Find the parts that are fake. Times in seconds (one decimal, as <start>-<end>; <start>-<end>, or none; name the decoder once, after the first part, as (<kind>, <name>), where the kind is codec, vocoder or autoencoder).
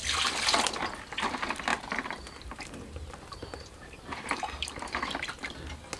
1.7-5.3 (vocoder, BigVGAN v2)